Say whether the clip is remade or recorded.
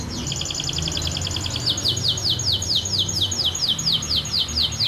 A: recorded